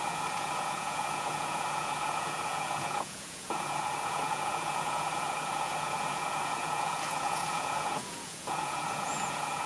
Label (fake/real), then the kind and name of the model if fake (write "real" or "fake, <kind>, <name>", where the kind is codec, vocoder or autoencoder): fake, vocoder, Vocos